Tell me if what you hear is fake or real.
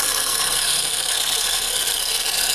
fake